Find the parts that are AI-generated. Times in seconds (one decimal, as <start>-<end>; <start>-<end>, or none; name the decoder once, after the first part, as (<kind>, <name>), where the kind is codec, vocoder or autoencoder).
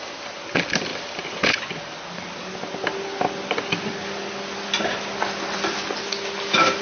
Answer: 0.9-1.6 (vocoder, BigVGAN v2)